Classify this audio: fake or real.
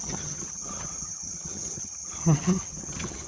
fake